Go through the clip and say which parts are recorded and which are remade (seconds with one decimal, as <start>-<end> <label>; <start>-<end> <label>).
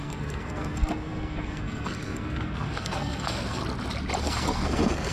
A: 0.0-3.6 remade; 3.6-4.2 recorded; 4.2-5.1 remade